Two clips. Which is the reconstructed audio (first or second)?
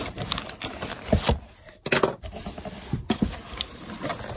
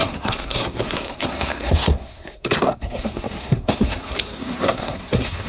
second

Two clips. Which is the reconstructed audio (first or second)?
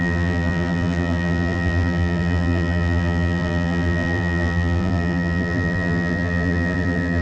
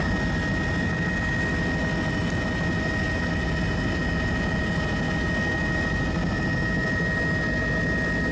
first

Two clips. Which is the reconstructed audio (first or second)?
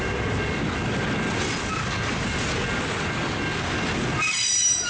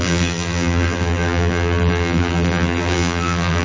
second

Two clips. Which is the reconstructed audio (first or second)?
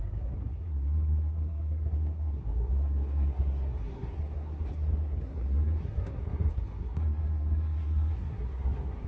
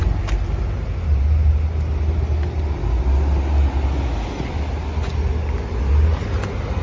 first